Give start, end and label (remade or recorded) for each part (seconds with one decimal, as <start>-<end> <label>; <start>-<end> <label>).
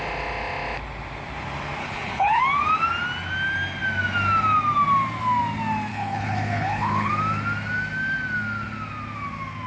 0.0-1.8 recorded; 1.8-2.4 remade; 2.4-5.9 recorded; 5.9-7.1 remade; 7.1-9.7 recorded